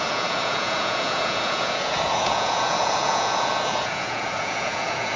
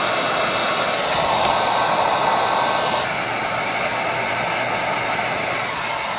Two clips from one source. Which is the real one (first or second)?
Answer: second